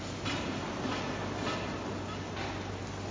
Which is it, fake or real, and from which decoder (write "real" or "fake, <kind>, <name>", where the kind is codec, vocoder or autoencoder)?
real